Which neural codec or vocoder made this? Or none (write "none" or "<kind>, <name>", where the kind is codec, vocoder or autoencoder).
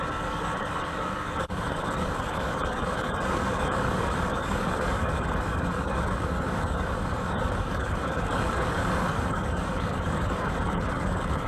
codec, DAC